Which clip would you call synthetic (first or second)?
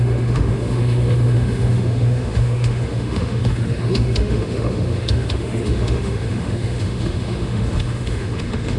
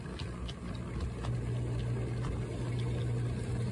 first